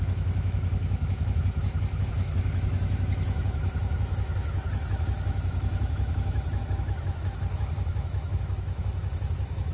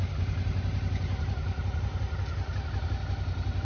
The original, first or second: second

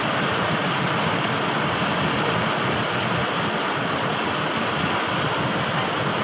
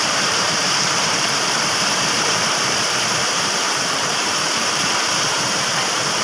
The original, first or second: first